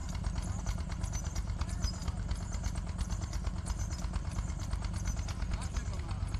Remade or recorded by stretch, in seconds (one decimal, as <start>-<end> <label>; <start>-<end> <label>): 0.0-6.4 recorded